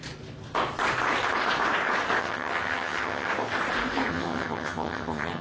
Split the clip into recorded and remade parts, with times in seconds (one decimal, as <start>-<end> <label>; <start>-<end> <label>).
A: 0.0-2.2 recorded; 2.2-3.3 remade; 3.3-4.1 recorded; 4.1-5.4 remade